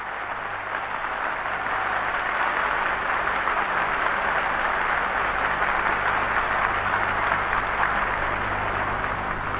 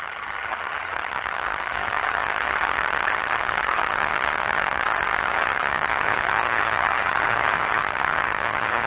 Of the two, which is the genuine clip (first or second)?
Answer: first